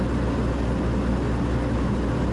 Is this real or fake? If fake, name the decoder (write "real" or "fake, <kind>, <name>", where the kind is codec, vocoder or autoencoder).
real